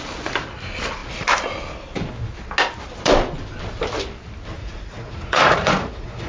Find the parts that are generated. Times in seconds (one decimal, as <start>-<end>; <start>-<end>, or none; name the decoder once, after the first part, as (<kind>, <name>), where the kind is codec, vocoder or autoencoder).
4.6-6.3 (vocoder, Vocos)